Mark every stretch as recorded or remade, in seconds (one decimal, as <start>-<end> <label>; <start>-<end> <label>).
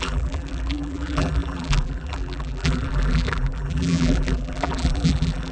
0.0-5.5 remade